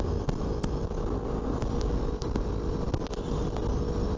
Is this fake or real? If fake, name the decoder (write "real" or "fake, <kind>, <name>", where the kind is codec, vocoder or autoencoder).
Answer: real